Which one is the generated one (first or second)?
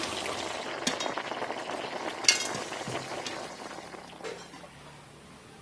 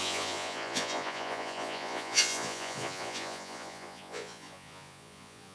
second